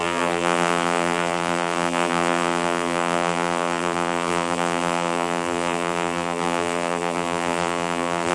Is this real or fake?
fake